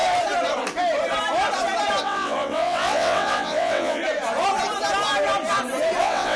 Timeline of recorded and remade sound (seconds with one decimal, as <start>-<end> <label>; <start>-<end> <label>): 0.0-2.0 recorded; 2.0-4.0 remade; 4.0-6.0 recorded; 6.0-6.4 remade